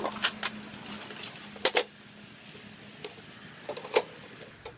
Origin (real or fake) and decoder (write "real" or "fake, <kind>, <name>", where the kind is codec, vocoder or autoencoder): real